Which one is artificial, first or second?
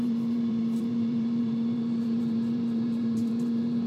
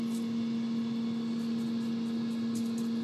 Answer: first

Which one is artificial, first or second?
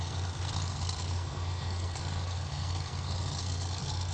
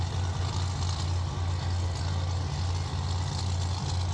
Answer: first